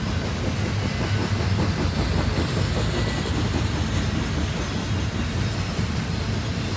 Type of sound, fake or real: real